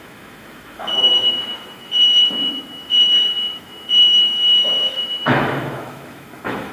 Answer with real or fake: fake